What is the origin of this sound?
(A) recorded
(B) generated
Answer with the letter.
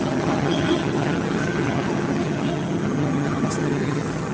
B